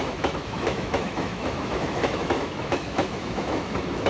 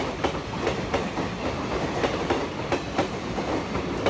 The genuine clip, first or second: second